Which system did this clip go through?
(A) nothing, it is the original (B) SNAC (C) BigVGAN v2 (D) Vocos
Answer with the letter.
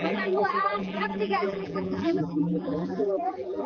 C